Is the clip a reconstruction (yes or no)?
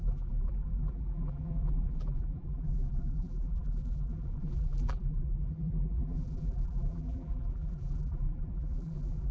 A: yes